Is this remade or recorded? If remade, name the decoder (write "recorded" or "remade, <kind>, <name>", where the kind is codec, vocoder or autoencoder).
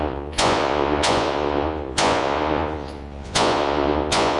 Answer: remade, vocoder, Vocos